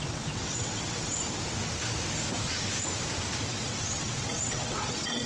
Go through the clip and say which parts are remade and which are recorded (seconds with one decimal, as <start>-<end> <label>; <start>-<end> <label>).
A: 0.0-1.2 remade; 1.2-3.5 recorded; 3.5-5.3 remade